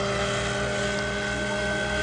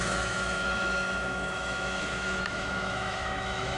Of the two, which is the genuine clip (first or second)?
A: first